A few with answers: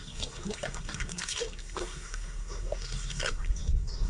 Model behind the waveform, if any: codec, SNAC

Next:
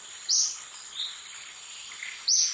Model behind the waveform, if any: none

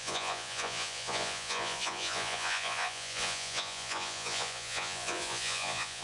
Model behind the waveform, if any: vocoder, Vocos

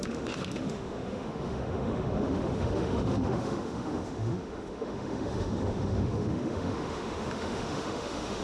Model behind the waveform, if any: autoencoder, DAC-VAE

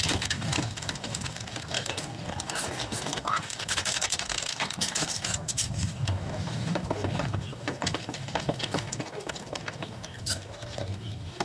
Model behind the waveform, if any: codec, DAC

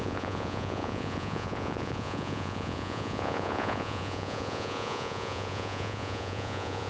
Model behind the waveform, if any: vocoder, Vocos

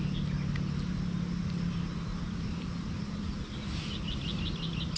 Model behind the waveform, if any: none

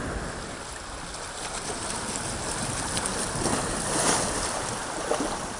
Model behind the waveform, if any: none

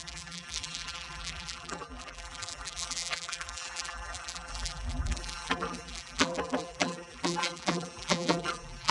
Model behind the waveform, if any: vocoder, BigVGAN v2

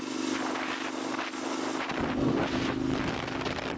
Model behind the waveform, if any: none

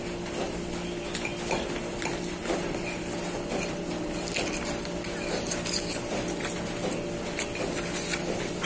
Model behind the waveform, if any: none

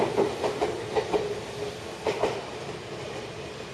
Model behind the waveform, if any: none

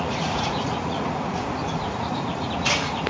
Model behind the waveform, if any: vocoder, Vocos